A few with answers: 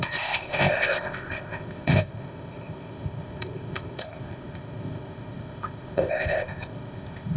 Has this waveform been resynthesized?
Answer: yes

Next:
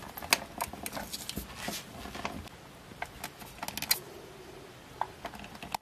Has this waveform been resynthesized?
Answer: no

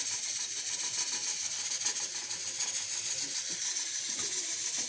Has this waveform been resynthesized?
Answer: no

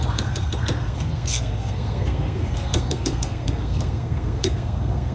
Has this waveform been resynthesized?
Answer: yes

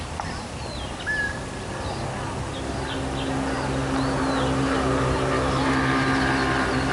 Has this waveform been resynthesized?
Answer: no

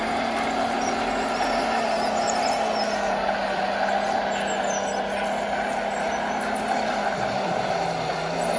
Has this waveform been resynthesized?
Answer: no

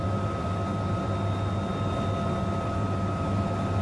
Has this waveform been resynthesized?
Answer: no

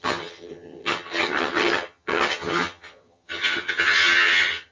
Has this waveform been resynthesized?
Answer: yes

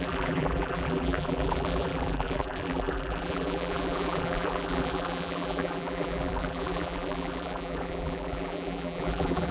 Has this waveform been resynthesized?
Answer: yes